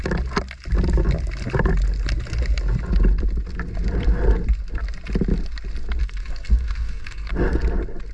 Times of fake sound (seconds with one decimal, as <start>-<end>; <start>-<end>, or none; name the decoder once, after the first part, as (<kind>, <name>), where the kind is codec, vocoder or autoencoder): 6.0-7.3 (codec, SNAC)